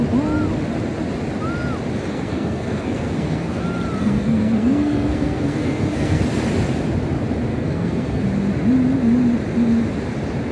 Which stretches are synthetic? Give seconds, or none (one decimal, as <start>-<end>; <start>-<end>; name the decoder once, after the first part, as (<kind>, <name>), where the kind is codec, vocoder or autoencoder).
2.1-3.6 (codec, SNAC); 4.0-6.4; 7.5-8.2

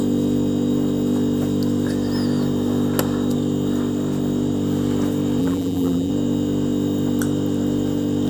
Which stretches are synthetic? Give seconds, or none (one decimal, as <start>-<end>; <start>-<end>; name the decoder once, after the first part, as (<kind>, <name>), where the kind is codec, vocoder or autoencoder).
5.4-6.1 (vocoder, BigVGAN v2)

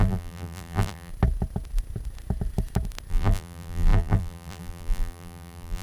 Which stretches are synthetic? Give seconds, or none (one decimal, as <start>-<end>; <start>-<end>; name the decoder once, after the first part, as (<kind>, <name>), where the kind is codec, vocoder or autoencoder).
0.0-1.1 (vocoder, BigVGAN v2); 3.1-5.8

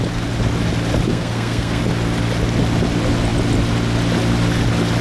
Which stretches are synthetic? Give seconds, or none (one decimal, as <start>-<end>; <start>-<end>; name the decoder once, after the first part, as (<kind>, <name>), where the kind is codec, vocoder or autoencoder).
1.1-1.8 (codec, SNAC)